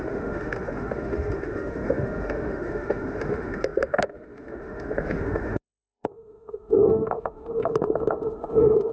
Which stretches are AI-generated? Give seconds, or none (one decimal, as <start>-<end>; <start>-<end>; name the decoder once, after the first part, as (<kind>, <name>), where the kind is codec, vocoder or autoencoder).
0.0-8.9 (autoencoder, DAC-VAE)

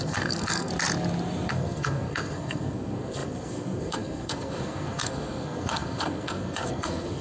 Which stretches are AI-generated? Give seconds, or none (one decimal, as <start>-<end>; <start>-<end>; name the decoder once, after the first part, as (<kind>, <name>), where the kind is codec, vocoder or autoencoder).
0.0-0.7 (codec, SNAC); 1.5-7.2